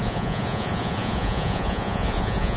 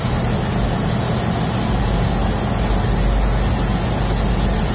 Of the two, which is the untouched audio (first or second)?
second